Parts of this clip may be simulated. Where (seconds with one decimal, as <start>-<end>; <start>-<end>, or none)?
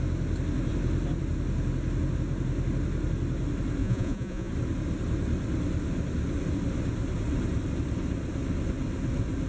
3.8-4.5